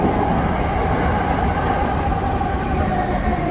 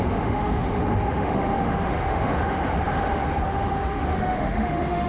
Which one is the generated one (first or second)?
second